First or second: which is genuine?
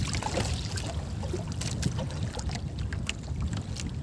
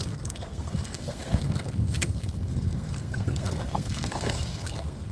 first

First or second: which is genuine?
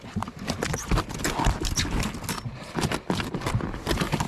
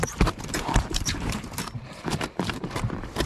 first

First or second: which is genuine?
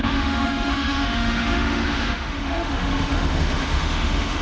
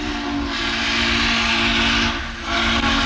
second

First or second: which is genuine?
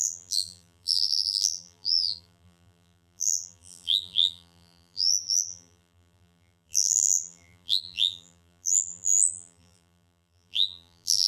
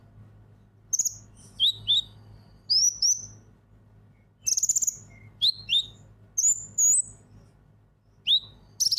second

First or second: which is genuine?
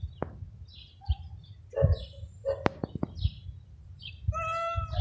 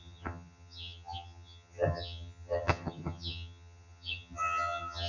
first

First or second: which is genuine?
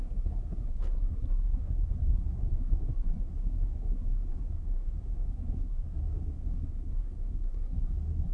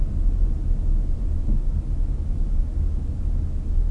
second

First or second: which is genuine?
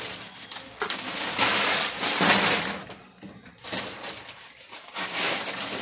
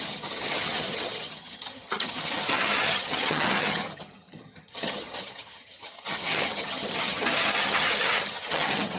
first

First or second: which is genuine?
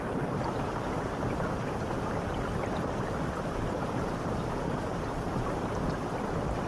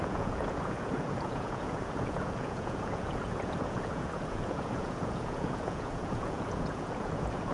first